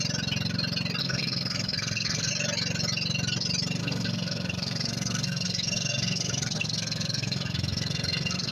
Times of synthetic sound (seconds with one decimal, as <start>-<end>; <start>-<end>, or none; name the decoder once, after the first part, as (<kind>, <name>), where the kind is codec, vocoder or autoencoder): 1.0-2.3 (codec, SNAC); 3.8-8.5